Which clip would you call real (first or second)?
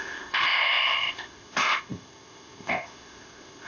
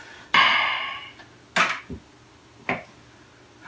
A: second